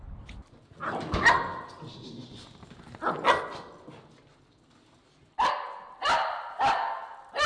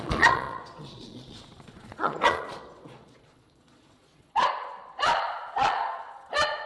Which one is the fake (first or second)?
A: second